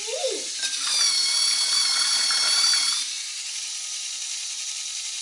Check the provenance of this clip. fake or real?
real